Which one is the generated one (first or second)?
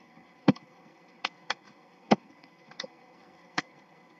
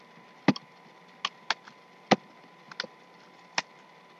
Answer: first